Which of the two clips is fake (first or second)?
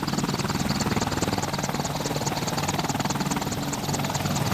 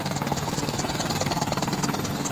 second